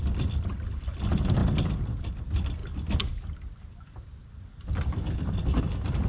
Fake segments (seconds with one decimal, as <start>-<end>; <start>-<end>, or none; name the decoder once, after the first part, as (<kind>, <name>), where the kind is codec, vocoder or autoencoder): none